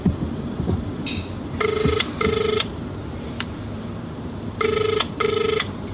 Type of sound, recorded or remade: remade